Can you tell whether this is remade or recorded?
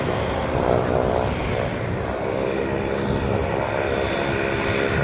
recorded